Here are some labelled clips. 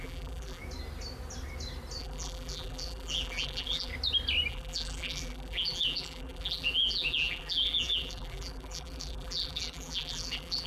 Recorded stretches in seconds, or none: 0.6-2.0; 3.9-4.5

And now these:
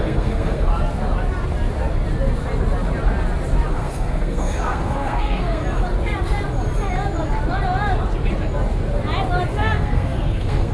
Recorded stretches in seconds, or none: 0.7-3.7; 5.6-9.5